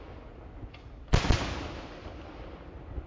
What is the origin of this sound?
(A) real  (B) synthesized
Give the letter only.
A